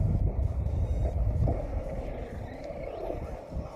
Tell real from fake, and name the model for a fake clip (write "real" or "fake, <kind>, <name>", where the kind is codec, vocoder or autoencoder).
real